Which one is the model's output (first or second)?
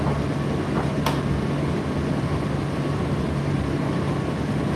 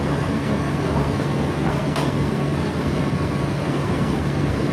second